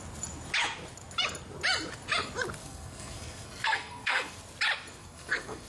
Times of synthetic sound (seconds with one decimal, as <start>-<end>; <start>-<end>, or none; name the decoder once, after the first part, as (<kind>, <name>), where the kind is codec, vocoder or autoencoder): 2.6-4.4 (codec, SNAC); 5.0-5.7